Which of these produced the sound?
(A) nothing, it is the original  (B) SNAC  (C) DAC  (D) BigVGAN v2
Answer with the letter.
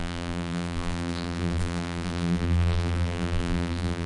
D